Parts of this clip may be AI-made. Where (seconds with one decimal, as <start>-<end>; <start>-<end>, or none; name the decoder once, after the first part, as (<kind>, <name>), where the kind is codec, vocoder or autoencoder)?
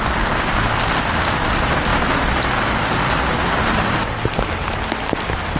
none